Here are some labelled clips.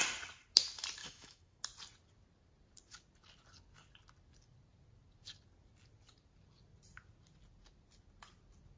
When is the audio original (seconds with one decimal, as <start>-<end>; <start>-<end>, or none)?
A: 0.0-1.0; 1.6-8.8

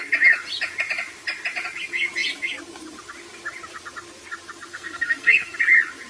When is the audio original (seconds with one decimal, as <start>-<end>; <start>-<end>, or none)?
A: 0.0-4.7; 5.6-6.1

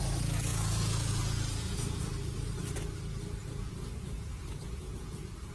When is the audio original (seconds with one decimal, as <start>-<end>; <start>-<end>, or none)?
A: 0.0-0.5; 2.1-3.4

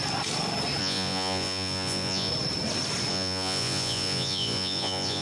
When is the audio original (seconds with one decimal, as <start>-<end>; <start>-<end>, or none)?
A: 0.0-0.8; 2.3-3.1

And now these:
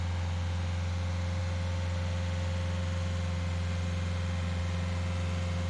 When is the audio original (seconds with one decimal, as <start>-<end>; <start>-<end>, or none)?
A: 0.0-5.7

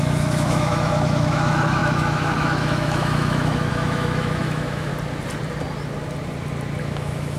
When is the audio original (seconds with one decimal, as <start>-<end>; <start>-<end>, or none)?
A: 4.9-6.8